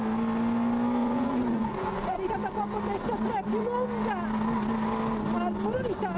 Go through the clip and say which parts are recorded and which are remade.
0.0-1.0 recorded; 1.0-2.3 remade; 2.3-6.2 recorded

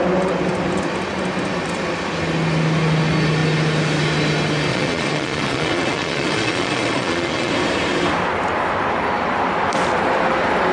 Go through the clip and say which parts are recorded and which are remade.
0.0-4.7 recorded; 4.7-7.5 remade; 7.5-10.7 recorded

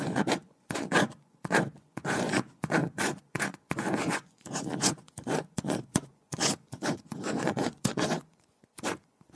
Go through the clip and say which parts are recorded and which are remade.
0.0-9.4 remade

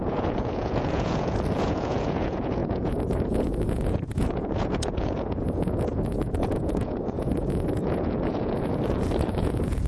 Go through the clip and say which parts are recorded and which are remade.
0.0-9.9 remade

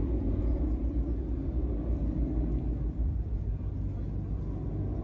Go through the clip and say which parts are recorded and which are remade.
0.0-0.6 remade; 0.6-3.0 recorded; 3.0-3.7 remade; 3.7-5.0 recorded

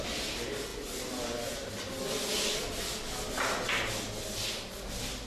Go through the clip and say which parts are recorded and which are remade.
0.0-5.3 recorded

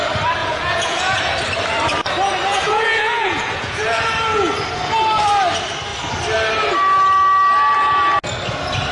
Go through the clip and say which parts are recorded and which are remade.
0.0-0.4 recorded; 0.4-1.2 remade; 1.2-2.5 recorded; 2.5-4.1 remade; 4.1-8.9 recorded